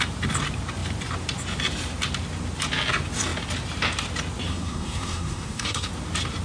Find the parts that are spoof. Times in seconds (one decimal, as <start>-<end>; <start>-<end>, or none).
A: 4.5-5.9

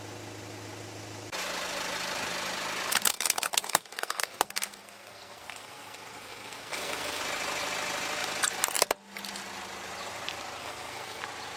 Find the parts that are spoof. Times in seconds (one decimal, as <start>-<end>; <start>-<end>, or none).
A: 3.1-7.2; 10.6-11.2